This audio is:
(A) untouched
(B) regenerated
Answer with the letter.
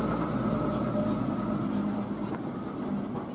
A